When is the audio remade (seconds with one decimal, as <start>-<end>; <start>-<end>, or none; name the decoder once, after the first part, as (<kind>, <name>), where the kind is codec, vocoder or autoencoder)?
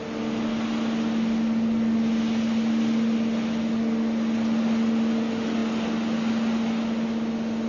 none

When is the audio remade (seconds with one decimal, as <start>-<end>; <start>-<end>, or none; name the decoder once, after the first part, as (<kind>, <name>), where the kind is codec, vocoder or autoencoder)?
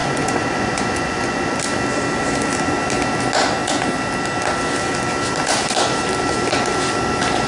0.0-1.6 (vocoder, Vocos)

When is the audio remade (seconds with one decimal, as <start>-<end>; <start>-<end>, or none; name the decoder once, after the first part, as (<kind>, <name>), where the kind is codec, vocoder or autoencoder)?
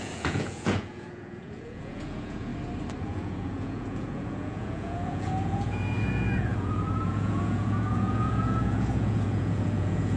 0.0-2.5 (vocoder, Vocos); 3.0-10.2